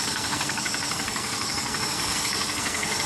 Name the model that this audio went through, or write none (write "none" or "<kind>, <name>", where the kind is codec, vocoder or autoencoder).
codec, SNAC